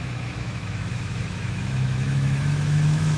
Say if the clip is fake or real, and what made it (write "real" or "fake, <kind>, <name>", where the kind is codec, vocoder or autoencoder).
fake, autoencoder, DAC-VAE